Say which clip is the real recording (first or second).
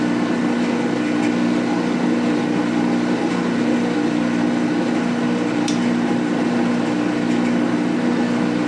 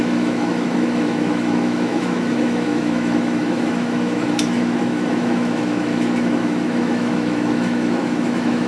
first